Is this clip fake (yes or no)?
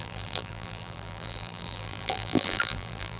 yes